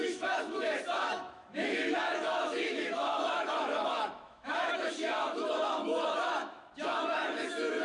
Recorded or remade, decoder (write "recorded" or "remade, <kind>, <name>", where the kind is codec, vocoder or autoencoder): remade, autoencoder, DAC-VAE